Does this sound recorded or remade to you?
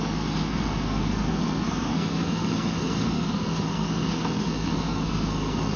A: remade